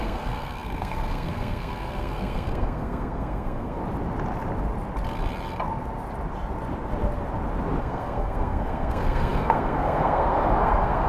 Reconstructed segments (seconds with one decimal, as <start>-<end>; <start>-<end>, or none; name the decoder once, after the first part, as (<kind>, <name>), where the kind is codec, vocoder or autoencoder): 0.0-3.8 (codec, SNAC); 7.8-11.1